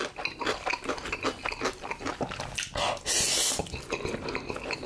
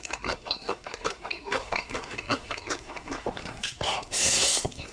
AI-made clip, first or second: second